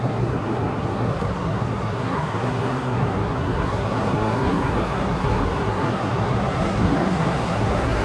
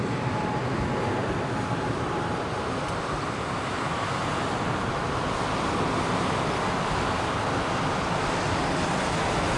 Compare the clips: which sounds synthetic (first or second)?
first